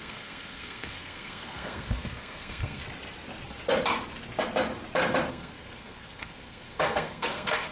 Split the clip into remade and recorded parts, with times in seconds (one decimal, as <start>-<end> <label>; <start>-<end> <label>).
0.0-2.8 remade; 2.8-5.3 recorded; 5.3-7.7 remade